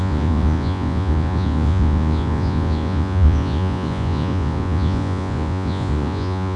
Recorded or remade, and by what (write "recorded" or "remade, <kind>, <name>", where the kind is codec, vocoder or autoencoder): remade, vocoder, Vocos